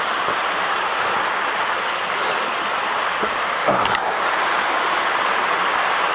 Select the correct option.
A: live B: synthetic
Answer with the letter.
A